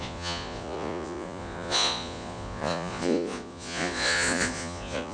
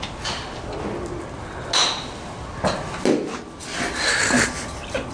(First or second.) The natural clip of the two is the second